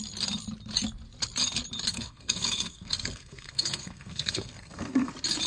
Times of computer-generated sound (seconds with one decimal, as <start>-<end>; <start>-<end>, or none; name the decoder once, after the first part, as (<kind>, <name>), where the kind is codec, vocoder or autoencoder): 1.9-5.1 (codec, SNAC)